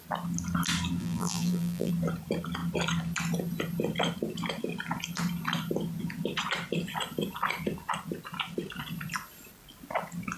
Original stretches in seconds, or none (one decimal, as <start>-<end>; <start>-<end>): 0.0-1.0; 1.9-10.4